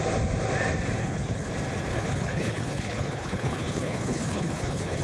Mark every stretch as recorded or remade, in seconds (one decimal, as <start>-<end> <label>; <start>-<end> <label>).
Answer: 0.0-1.0 recorded; 1.0-1.5 remade; 1.5-1.9 recorded; 1.9-5.0 remade